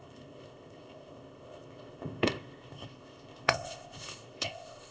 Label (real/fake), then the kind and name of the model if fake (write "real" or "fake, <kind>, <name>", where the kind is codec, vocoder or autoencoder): fake, codec, ZipCodec